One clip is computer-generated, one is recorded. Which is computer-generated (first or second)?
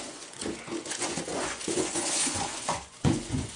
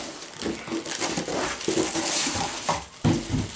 first